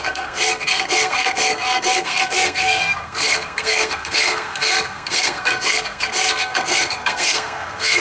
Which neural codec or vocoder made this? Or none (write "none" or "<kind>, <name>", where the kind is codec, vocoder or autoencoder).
codec, SNAC